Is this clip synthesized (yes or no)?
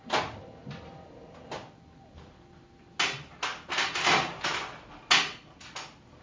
no